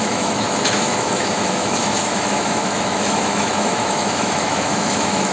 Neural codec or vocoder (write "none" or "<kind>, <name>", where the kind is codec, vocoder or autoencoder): autoencoder, DAC-VAE